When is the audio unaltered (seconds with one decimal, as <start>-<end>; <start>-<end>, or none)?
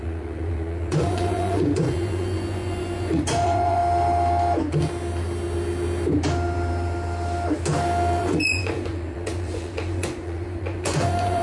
3.8-8.2